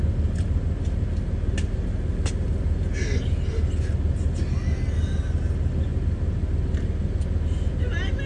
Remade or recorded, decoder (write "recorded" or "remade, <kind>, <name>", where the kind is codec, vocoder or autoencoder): recorded